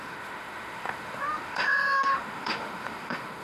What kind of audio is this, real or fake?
fake